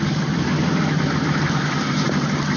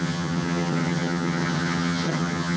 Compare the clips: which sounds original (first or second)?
first